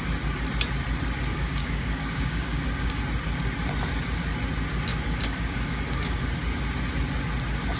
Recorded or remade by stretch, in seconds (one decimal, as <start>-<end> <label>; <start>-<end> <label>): 0.0-1.3 recorded; 1.3-3.0 remade; 3.0-4.9 recorded; 4.9-6.2 remade; 6.2-7.8 recorded